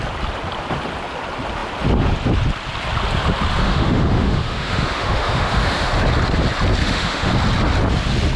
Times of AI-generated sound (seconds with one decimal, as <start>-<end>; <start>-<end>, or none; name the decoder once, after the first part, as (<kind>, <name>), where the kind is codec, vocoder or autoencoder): 3.6-5.9 (autoencoder, DAC-VAE); 6.8-7.3